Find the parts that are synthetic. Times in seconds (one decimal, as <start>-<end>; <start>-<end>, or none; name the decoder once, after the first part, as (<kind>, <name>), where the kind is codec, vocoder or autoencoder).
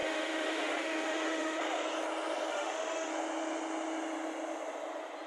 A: 0.0-1.6 (autoencoder, DAC-VAE); 2.5-3.1